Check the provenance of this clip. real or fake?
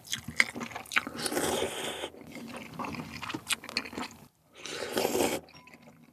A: real